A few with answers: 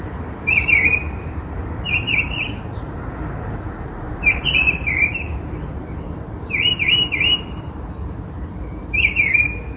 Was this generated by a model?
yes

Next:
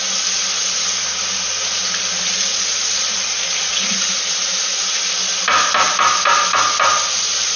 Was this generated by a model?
no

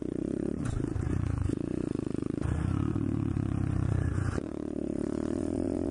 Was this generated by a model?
yes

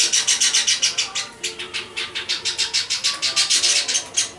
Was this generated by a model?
no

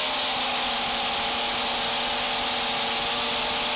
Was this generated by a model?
no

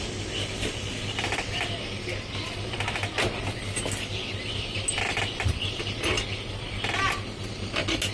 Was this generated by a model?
no